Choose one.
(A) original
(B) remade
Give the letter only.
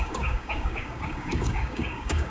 B